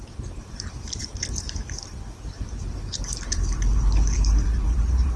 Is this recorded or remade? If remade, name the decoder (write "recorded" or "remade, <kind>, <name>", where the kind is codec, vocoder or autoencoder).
remade, vocoder, BigVGAN v2